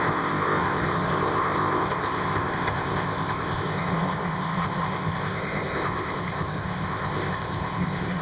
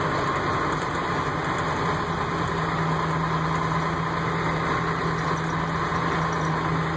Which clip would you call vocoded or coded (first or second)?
first